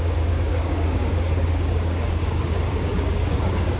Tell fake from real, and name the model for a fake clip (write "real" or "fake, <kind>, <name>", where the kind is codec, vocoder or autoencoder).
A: fake, codec, DAC